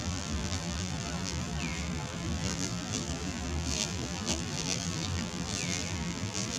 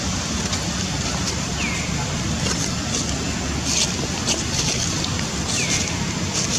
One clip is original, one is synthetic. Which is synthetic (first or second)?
first